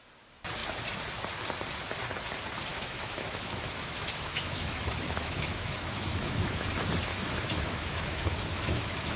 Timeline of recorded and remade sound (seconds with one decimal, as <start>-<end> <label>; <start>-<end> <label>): 0.0-2.7 recorded; 2.7-6.6 remade; 6.6-7.1 recorded; 7.1-9.2 remade